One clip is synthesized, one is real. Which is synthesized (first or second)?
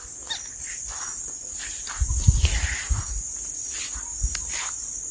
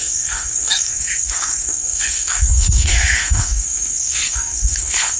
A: second